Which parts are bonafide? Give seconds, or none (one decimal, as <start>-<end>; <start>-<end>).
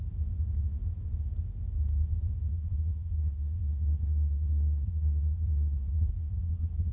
0.0-2.5